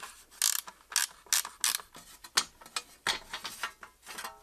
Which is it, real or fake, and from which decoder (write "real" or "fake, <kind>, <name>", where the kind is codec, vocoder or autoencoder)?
real